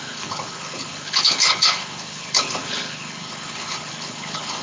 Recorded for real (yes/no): no